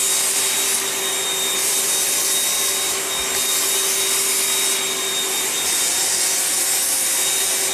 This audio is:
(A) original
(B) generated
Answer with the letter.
A